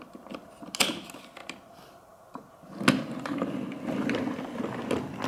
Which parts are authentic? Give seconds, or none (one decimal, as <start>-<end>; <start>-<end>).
0.0-5.3